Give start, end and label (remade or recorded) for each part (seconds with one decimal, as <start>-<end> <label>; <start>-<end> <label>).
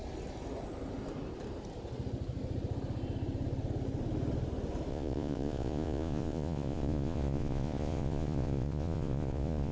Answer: 0.0-4.9 recorded; 4.9-9.7 remade